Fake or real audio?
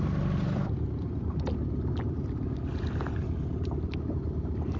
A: real